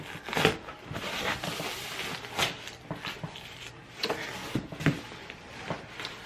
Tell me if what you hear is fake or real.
real